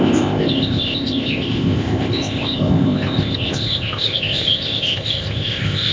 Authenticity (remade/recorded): remade